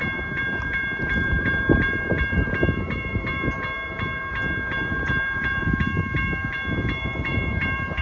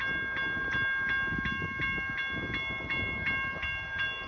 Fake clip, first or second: first